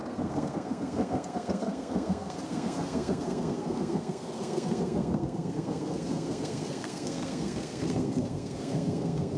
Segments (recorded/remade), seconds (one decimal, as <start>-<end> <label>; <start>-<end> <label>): 0.0-9.4 remade